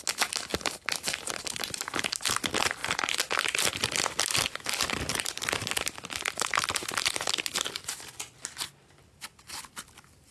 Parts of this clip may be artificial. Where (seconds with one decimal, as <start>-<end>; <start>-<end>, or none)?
none